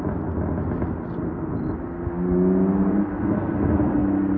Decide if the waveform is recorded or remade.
recorded